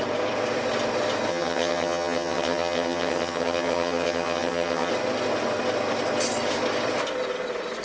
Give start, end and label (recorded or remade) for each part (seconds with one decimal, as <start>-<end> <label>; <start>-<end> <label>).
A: 0.0-1.3 recorded; 1.3-4.9 remade; 4.9-7.8 recorded

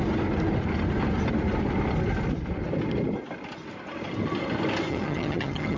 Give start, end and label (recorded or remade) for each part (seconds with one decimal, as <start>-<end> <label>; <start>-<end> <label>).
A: 0.0-4.9 recorded; 4.9-5.8 remade

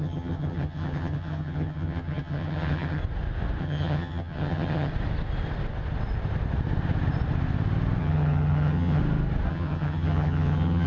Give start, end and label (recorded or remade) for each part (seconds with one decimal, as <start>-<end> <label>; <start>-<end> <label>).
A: 0.0-3.0 remade; 3.0-3.6 recorded; 3.6-4.9 remade; 4.9-8.0 recorded; 8.0-9.0 remade; 9.0-9.5 recorded; 9.5-10.9 remade

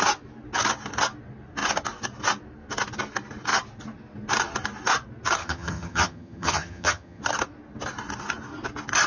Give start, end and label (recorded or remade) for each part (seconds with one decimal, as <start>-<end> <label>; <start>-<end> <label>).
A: 0.0-5.4 recorded; 5.4-7.2 remade; 7.2-9.1 recorded

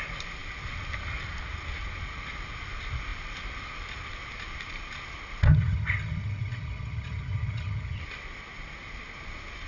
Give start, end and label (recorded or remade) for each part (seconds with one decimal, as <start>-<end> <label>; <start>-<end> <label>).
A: 0.0-5.5 recorded; 5.5-8.0 remade; 8.0-9.7 recorded

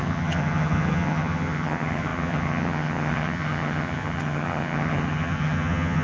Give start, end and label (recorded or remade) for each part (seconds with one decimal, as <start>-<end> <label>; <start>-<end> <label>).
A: 0.0-6.0 remade

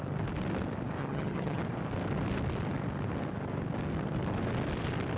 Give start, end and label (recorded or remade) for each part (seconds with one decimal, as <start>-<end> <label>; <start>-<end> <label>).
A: 0.0-1.0 recorded; 1.0-1.6 remade; 1.6-5.2 recorded